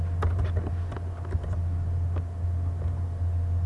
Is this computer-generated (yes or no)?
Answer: no